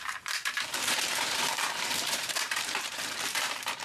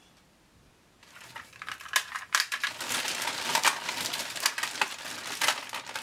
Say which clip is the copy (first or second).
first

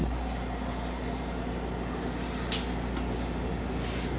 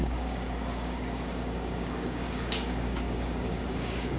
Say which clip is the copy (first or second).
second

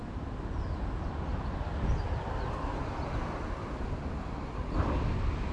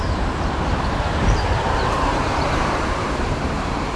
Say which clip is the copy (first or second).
second